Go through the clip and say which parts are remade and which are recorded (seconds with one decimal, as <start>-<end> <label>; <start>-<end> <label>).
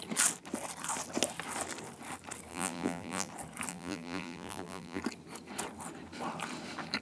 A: 0.0-2.5 recorded; 2.5-3.3 remade; 3.3-3.7 recorded; 3.7-5.0 remade; 5.0-7.0 recorded